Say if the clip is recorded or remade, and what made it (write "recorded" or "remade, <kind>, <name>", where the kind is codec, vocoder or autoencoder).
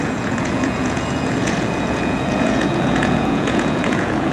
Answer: remade, vocoder, Vocos